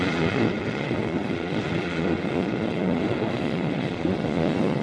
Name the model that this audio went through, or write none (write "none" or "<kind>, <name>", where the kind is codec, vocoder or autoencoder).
vocoder, Vocos